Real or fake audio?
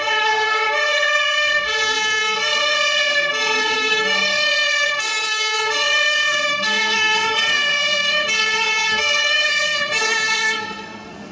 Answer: fake